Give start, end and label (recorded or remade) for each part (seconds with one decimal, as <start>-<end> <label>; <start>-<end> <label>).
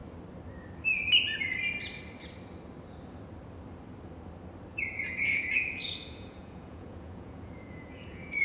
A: 0.0-4.7 recorded; 4.7-8.4 remade